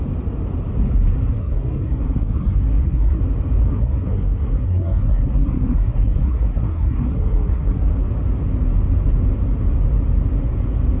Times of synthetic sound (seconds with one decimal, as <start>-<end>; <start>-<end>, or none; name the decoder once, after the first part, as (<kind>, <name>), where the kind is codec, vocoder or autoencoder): 1.4-3.2 (codec, SNAC); 3.6-7.9